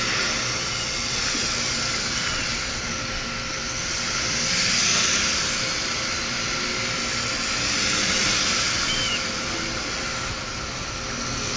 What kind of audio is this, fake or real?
real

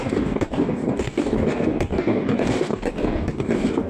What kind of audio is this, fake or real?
fake